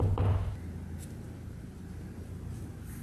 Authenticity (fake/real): real